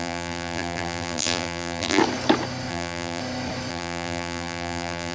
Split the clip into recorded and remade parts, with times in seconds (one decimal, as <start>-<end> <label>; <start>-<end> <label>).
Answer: 0.0-2.0 remade; 2.0-2.7 recorded; 2.7-3.2 remade; 3.2-3.7 recorded; 3.7-5.1 remade